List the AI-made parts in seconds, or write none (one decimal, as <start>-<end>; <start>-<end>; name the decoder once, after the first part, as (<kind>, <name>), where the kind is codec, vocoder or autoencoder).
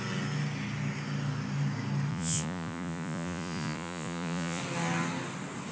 2.1-4.6 (vocoder, Vocos)